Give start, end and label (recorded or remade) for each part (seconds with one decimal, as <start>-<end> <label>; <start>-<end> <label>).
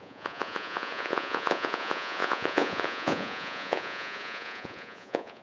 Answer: 0.0-5.4 remade